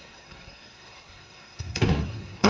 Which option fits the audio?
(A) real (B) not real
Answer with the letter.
B